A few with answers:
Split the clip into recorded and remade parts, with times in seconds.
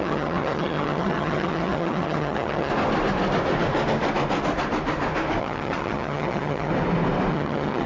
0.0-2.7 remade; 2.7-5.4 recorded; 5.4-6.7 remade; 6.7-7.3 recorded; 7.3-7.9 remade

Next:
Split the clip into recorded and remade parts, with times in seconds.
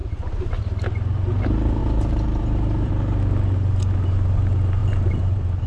0.0-0.6 remade; 0.6-1.8 recorded; 1.8-2.9 remade; 2.9-4.8 recorded; 4.8-5.7 remade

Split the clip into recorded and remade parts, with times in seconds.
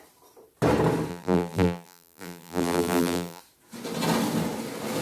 0.0-1.1 recorded; 1.1-3.4 remade; 3.4-5.0 recorded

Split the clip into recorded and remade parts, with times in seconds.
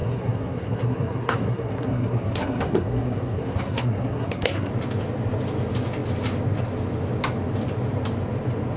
0.0-4.7 remade; 4.7-8.8 recorded